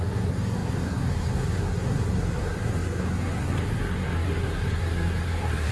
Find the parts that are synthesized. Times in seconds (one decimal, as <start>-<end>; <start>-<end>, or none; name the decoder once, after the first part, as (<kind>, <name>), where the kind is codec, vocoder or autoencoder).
0.0-5.7 (codec, SNAC)